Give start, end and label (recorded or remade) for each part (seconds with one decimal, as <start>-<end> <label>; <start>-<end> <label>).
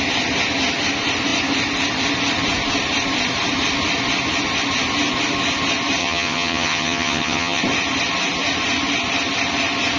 0.0-6.0 recorded; 6.0-7.6 remade; 7.6-10.0 recorded